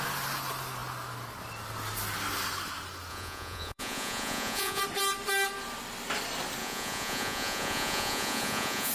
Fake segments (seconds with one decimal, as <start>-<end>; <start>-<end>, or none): 3.1-4.8; 6.6-8.9